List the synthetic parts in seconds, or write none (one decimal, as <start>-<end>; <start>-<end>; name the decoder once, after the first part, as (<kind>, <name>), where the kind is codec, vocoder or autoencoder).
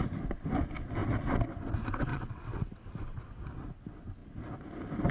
2.1-2.9 (vocoder, WaveNeXt)